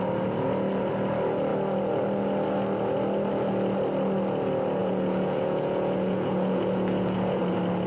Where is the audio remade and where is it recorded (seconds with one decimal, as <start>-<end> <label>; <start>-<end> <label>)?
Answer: 0.0-4.8 recorded; 4.8-7.4 remade; 7.4-7.9 recorded